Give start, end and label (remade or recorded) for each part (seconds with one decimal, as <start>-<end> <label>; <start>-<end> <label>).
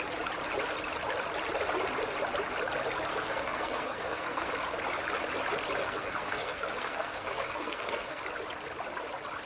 0.0-3.1 recorded; 3.1-4.5 remade; 4.5-5.8 recorded; 5.8-8.2 remade; 8.2-9.5 recorded